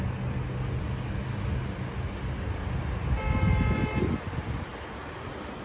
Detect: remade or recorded recorded